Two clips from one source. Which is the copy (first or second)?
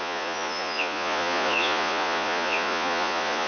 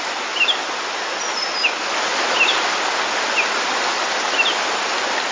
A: first